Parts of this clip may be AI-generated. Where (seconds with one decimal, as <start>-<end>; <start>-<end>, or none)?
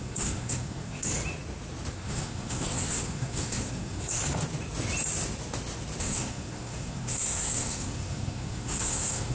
0.0-1.1; 1.9-4.2; 6.0-9.3